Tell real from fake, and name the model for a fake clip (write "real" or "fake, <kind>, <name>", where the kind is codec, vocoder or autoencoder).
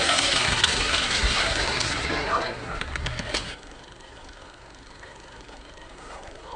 fake, codec, SNAC